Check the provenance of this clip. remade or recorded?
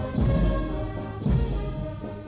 recorded